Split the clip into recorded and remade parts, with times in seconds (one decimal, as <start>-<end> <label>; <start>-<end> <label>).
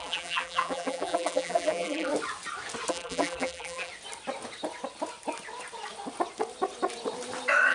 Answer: 0.0-2.1 remade; 2.1-2.9 recorded; 2.9-3.9 remade; 3.9-7.7 recorded